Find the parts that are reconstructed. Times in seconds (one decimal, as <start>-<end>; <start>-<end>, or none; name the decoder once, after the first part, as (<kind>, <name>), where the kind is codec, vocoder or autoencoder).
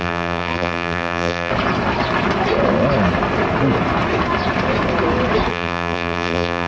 0.0-1.5 (vocoder, BigVGAN v2); 5.5-6.7